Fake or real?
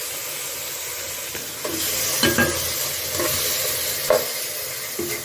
real